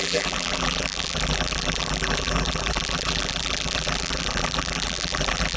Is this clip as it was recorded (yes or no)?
no